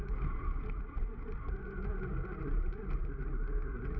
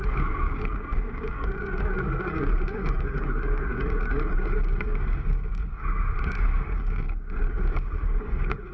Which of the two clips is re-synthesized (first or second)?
second